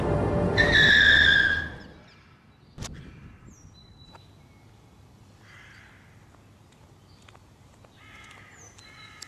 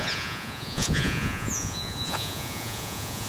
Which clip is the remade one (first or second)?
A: second